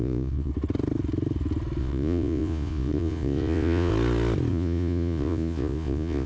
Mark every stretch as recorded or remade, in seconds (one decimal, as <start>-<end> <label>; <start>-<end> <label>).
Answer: 0.0-0.5 remade; 0.5-1.8 recorded; 1.8-3.9 remade; 3.9-4.5 recorded; 4.5-6.3 remade